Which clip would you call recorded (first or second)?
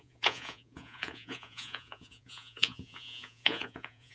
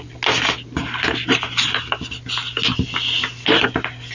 second